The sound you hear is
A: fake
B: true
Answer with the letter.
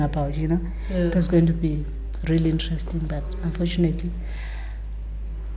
B